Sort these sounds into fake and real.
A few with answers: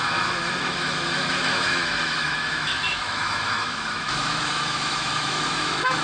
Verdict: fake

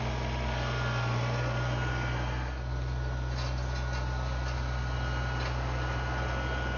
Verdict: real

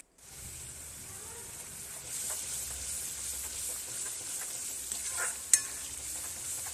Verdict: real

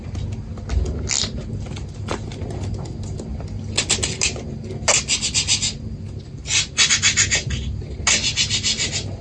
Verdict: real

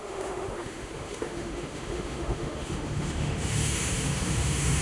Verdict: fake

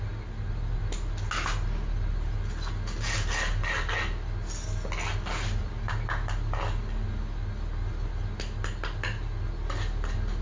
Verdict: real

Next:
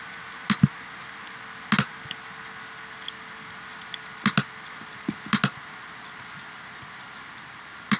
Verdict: real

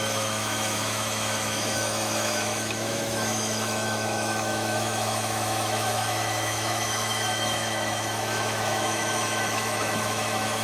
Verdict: fake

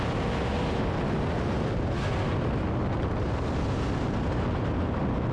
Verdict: real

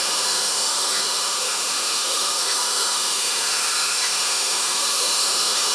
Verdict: fake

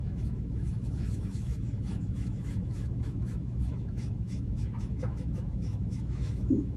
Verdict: fake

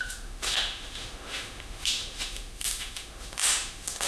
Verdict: fake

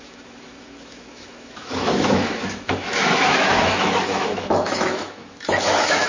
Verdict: fake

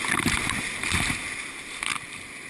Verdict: real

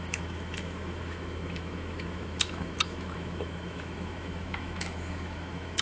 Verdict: fake